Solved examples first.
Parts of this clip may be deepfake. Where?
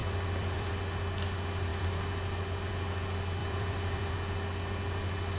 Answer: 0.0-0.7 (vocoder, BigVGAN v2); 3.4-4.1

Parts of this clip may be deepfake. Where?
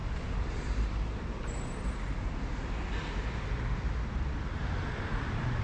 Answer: 0.0-1.4 (vocoder, BigVGAN v2); 4.5-5.6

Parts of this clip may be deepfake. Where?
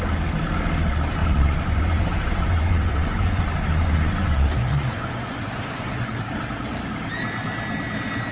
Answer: 1.2-6.2 (vocoder, Vocos)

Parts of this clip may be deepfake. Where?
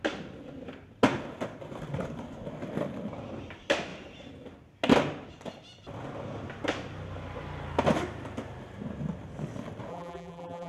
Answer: 9.9-10.7 (vocoder, BigVGAN v2)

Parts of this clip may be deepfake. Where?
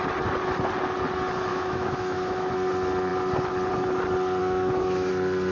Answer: 1.5-2.5 (autoencoder, DAC-VAE); 4.4-5.1